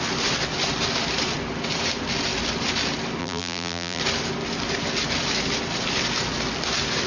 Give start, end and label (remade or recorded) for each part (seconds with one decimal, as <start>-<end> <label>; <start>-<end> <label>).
0.0-3.2 recorded; 3.2-4.0 remade; 4.0-7.1 recorded